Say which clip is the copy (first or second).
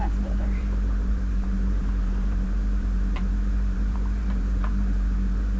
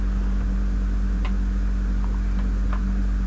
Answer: first